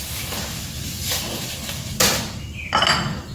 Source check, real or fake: real